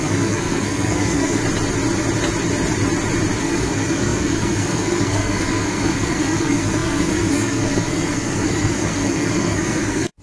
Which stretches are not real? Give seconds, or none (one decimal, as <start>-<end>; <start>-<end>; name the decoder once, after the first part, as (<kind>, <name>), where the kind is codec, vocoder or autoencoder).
0.0-1.4 (codec, SNAC); 3.4-10.2